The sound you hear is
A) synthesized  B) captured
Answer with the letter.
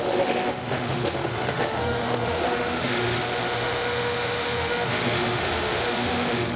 A